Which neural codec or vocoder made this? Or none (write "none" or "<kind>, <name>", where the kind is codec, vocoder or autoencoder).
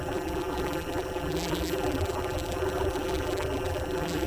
vocoder, BigVGAN v2